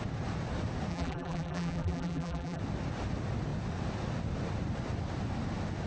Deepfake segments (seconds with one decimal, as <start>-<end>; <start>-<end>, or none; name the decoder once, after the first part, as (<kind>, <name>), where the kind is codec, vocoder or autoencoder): 0.9-2.6 (vocoder, BigVGAN v2)